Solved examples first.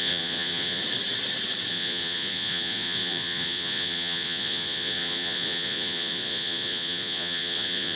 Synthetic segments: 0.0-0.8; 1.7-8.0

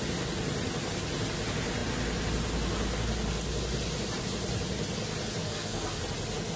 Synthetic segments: 5.4-6.0

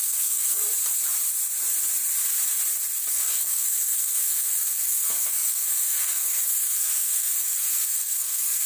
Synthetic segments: 0.0-0.6; 3.1-8.7

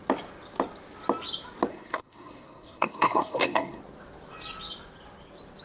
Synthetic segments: 1.7-3.8

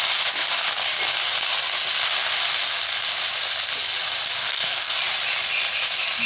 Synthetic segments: 4.4-4.9

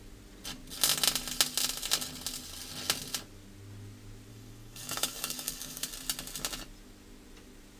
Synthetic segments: 4.3-5.9

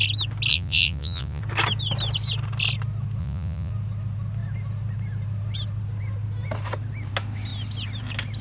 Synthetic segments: 0.5-1.4; 3.2-3.7

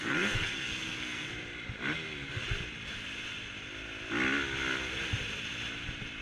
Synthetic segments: 0.0-1.3